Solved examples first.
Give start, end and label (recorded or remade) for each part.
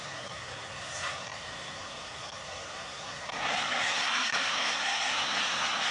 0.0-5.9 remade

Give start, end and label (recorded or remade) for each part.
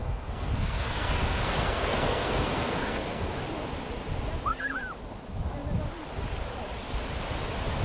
0.0-3.2 remade; 3.2-7.8 recorded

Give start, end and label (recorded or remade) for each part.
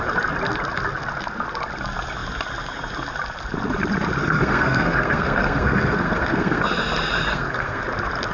0.0-4.2 recorded; 4.2-6.6 remade; 6.6-7.3 recorded; 7.3-7.8 remade; 7.8-8.3 recorded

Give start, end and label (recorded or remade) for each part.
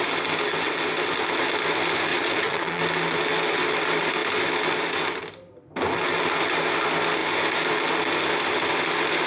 0.0-2.1 recorded; 2.1-2.8 remade; 2.8-9.3 recorded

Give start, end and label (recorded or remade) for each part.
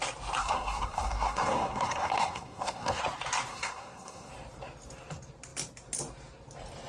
0.0-0.4 recorded; 0.4-3.0 remade; 3.0-3.5 recorded; 3.5-4.3 remade; 4.3-6.9 recorded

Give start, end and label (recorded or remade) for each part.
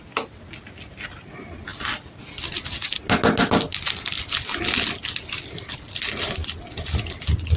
0.0-7.6 recorded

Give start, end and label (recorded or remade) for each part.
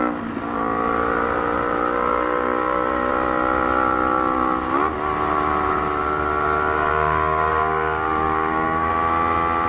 0.0-2.1 recorded; 2.1-3.1 remade; 3.1-6.9 recorded; 6.9-8.9 remade; 8.9-9.7 recorded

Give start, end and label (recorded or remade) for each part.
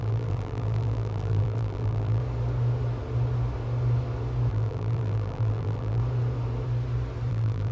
0.0-2.2 remade; 2.2-4.5 recorded; 4.5-6.0 remade; 6.0-7.3 recorded; 7.3-7.7 remade